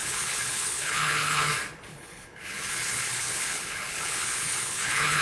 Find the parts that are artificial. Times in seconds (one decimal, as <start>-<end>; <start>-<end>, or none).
0.0-1.5; 1.9-5.2